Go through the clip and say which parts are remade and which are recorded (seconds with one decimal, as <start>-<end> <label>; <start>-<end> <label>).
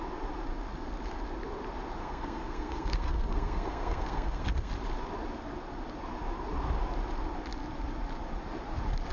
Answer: 0.0-2.0 recorded; 2.0-4.7 remade; 4.7-9.1 recorded